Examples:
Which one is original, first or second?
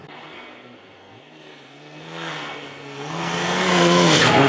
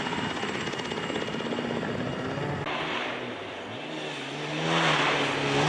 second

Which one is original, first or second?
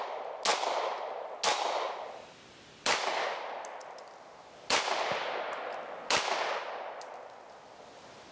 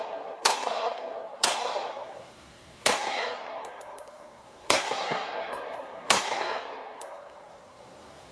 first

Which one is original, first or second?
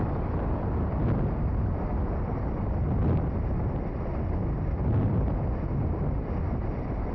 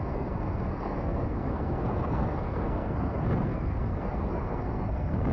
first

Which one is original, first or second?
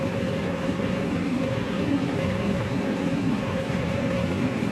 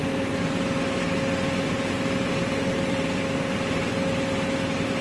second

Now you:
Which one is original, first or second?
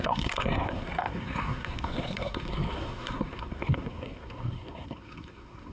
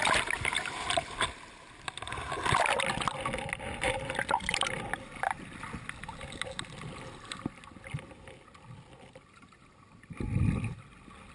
second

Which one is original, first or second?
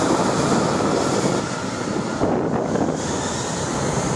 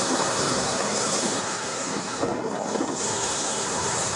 first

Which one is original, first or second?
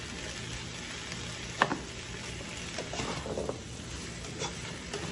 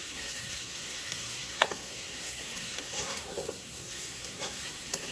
first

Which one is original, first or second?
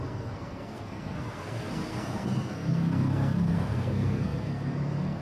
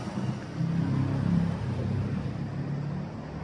second